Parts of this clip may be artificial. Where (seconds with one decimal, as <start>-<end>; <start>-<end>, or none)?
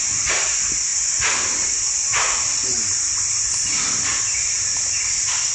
none